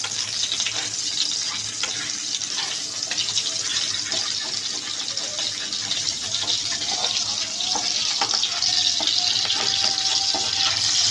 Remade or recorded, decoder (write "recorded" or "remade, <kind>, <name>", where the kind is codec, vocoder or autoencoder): recorded